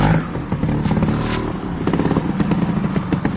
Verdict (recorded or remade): recorded